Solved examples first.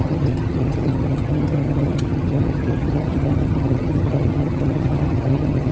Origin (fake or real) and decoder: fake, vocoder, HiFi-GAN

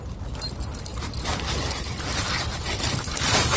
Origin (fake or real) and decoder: real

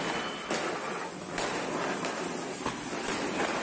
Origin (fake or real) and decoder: real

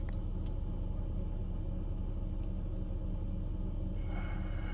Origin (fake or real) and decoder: real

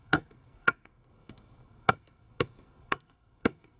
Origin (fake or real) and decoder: fake, codec, SNAC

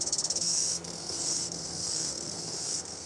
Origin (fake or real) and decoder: fake, codec, SNAC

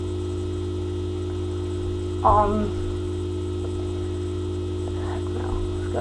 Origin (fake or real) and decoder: real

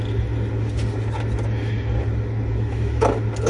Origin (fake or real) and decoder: real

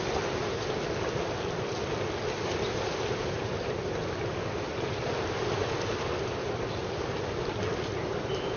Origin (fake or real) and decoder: real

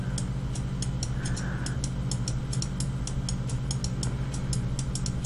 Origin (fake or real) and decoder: real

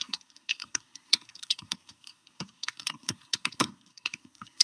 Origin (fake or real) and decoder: fake, codec, SNAC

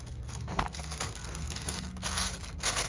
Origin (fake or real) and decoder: fake, codec, SNAC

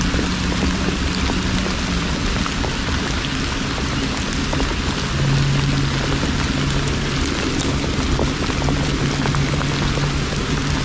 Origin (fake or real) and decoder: real